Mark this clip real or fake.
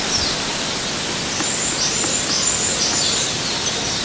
real